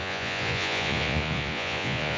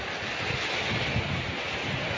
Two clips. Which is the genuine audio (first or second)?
second